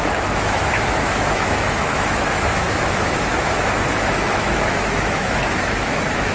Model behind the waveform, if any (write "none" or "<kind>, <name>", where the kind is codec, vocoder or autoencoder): autoencoder, DAC-VAE